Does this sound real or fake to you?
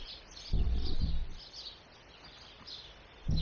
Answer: real